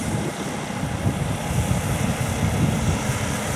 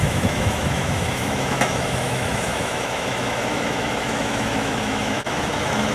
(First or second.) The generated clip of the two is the second